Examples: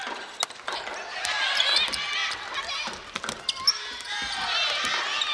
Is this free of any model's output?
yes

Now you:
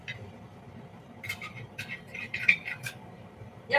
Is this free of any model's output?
no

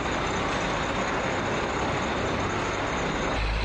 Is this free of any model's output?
yes